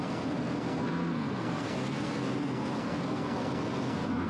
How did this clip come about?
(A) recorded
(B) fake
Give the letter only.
B